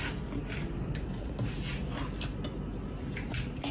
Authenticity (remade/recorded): recorded